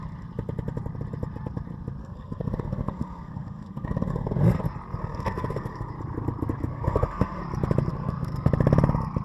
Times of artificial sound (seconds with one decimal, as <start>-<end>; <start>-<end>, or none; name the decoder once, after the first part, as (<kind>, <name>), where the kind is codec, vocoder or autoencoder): 2.0-4.6 (codec, SNAC); 5.0-5.9; 6.7-7.4; 7.9-8.5